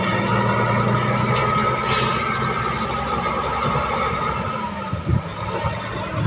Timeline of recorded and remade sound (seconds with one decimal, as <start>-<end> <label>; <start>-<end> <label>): 0.0-6.3 recorded